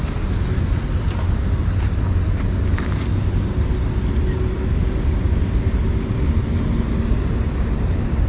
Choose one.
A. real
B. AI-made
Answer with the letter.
A